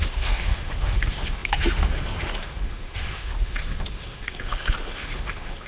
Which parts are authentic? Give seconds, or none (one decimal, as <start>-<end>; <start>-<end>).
none